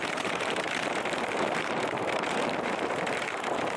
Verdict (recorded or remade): remade